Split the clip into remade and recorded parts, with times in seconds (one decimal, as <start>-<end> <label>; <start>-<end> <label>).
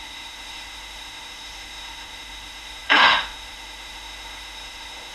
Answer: 0.0-5.1 remade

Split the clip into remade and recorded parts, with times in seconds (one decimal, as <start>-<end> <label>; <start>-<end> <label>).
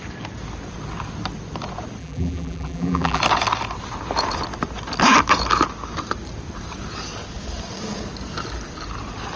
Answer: 0.0-2.0 recorded; 2.0-3.2 remade; 3.2-9.4 recorded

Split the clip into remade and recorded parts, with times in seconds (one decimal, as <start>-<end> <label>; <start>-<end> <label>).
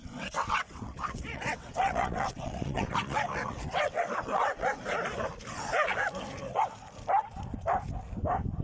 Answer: 0.0-4.8 remade; 4.8-8.6 recorded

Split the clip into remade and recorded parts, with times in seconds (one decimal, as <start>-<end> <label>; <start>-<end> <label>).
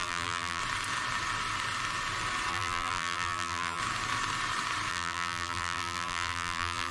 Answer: 0.0-0.6 remade; 0.6-2.5 recorded; 2.5-3.8 remade; 3.8-4.9 recorded; 4.9-6.9 remade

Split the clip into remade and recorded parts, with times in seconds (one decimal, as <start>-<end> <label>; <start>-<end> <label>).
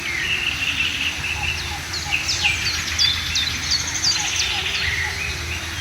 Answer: 0.0-5.8 recorded